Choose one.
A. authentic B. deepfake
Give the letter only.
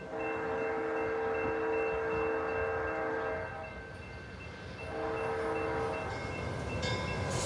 A